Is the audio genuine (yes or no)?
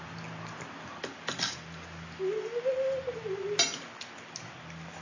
yes